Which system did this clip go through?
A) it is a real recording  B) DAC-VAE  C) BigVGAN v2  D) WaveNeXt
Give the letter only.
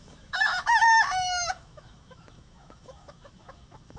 B